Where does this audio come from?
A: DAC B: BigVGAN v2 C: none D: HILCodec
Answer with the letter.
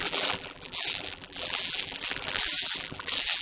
B